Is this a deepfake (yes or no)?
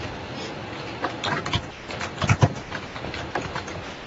no